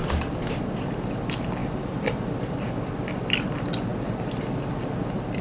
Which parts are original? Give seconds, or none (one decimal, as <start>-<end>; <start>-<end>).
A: 1.2-1.6; 2.9-5.4